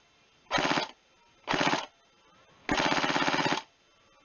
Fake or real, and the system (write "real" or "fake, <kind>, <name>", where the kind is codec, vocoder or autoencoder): real